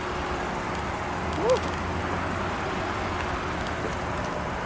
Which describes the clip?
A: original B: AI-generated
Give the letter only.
A